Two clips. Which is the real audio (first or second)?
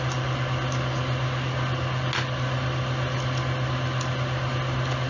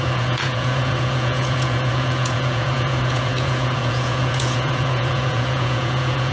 first